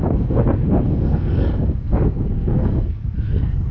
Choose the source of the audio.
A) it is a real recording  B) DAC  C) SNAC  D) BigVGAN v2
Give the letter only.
C